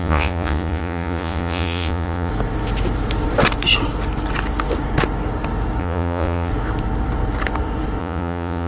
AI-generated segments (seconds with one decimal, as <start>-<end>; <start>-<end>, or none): 0.0-2.3; 5.8-6.5; 8.0-8.7